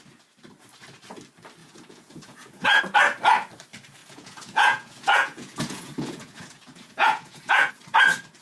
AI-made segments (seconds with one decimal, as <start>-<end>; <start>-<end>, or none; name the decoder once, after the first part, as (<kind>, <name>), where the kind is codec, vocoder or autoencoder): 1.6-2.8 (vocoder, Vocos); 4.0-7.7